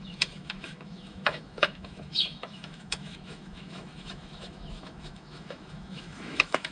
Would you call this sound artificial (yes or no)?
yes